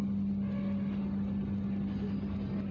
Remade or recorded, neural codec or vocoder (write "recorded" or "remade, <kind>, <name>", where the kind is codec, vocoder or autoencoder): recorded